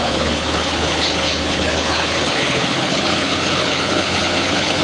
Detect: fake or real fake